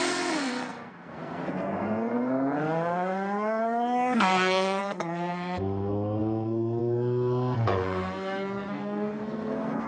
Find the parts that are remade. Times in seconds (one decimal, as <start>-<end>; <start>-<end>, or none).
0.0-9.9